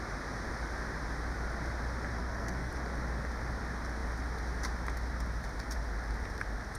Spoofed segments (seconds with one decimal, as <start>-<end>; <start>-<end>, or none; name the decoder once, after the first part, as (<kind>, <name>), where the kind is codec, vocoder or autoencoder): 2.2-2.7 (codec, SNAC)